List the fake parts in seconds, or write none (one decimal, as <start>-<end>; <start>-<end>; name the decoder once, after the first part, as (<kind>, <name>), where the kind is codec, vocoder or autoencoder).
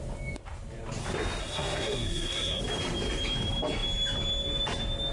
1.4-2.6 (codec, SNAC)